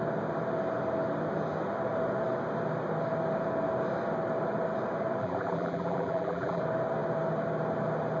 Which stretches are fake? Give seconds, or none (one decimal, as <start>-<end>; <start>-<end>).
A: 5.2-6.6